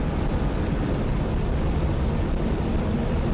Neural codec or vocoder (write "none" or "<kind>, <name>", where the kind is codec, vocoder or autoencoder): none